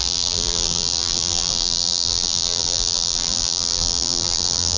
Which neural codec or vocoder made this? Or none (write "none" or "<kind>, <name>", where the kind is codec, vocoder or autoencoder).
vocoder, BigVGAN v2